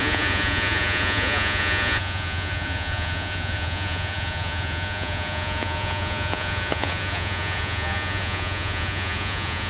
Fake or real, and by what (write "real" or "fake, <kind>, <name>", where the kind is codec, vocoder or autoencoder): fake, vocoder, Vocos